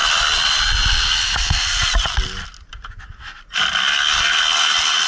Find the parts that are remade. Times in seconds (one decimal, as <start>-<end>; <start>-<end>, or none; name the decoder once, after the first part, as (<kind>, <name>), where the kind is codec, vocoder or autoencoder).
none

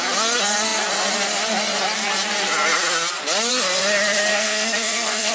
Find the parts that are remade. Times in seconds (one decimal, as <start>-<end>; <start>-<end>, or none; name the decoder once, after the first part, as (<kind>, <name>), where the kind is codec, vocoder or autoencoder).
4.3-5.3 (codec, SNAC)

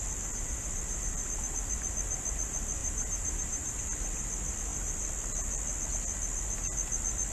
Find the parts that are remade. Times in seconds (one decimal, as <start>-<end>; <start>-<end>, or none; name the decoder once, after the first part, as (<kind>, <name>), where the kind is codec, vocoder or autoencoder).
2.8-3.8 (vocoder, BigVGAN v2)

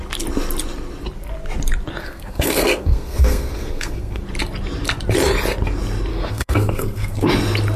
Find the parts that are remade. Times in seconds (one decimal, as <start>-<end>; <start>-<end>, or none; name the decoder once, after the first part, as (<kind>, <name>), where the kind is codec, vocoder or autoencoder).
2.0-4.2 (codec, SNAC); 6.1-7.3

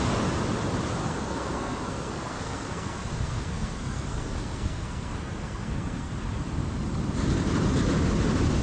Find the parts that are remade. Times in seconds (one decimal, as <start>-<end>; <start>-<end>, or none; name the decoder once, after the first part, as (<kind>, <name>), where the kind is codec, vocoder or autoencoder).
1.0-6.1 (codec, SNAC)

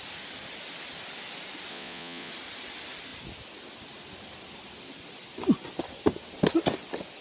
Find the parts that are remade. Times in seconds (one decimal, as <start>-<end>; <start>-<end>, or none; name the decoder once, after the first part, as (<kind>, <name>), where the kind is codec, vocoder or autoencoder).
1.7-2.3 (vocoder, Vocos)

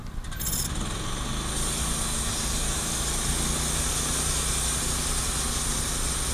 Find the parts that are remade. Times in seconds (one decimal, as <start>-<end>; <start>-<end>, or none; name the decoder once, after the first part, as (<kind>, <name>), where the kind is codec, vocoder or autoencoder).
none

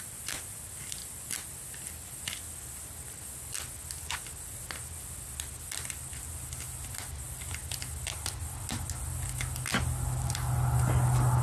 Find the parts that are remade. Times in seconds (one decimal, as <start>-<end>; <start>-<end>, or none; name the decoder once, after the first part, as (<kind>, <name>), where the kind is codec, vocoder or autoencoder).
none